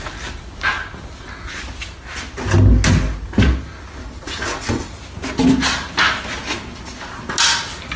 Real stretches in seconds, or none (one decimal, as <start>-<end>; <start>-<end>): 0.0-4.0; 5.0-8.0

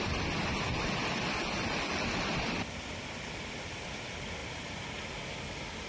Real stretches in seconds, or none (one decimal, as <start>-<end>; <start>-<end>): 0.0-5.9

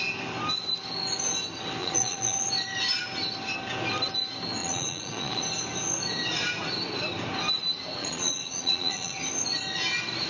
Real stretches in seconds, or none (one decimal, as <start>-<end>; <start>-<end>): 0.0-1.8; 2.5-4.6; 5.4-8.0; 9.2-10.3